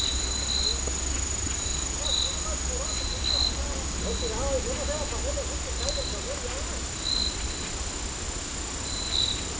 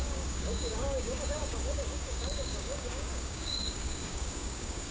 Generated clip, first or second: second